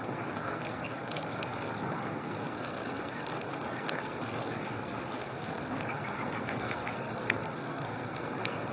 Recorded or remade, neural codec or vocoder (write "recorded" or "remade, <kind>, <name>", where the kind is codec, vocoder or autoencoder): remade, codec, SNAC